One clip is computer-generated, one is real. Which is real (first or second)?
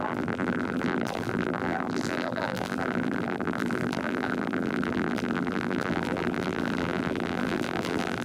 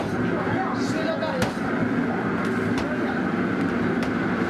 second